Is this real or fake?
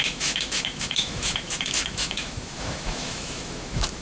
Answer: fake